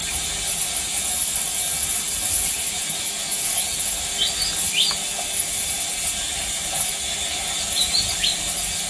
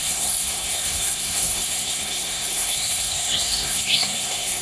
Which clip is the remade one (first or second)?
second